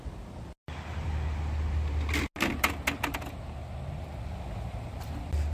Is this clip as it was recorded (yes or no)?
yes